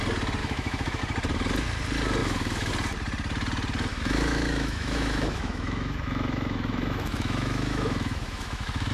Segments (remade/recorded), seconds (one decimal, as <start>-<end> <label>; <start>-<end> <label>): 0.0-0.4 recorded; 0.4-1.0 remade; 1.0-2.2 recorded; 2.2-2.7 remade; 2.7-3.9 recorded; 3.9-8.9 remade